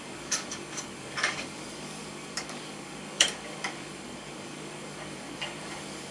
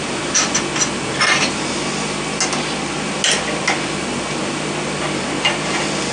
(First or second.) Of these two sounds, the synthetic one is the first